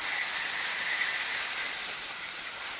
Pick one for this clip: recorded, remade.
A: recorded